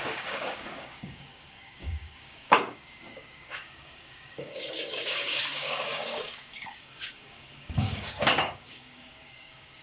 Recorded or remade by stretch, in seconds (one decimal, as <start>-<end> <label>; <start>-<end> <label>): 0.0-9.8 remade